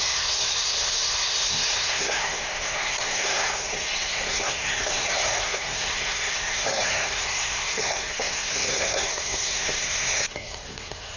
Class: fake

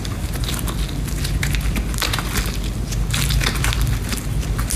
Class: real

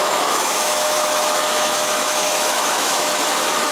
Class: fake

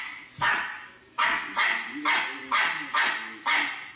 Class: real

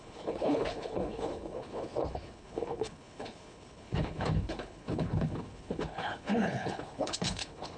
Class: fake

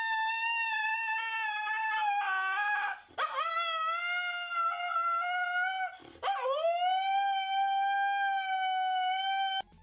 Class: real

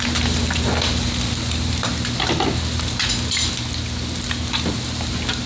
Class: real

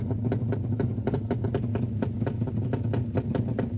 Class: real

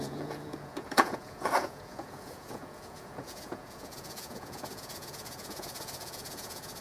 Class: fake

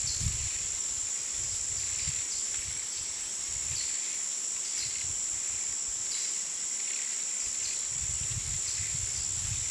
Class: real